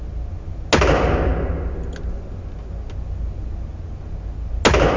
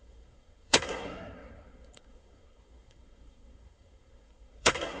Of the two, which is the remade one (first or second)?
second